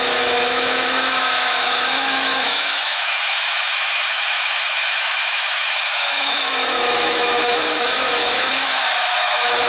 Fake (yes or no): yes